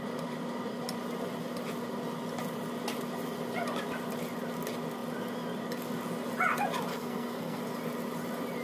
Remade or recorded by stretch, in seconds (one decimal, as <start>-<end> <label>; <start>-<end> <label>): 0.0-6.9 recorded; 6.9-7.6 remade; 7.6-8.6 recorded